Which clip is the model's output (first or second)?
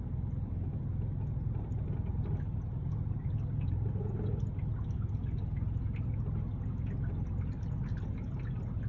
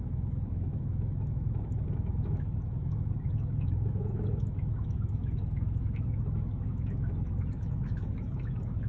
second